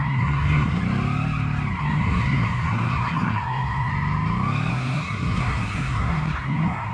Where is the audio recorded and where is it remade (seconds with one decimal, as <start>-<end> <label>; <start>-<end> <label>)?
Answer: 0.0-0.8 remade; 0.8-1.8 recorded; 1.8-3.9 remade; 3.9-4.7 recorded; 4.7-6.9 remade